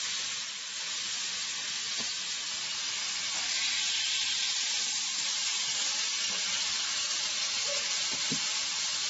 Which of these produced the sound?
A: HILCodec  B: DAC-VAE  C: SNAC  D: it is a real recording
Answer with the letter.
D